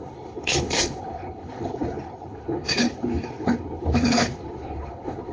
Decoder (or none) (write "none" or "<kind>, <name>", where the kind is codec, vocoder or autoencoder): codec, HILCodec